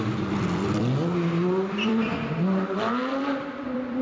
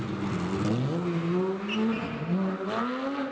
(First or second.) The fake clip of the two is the first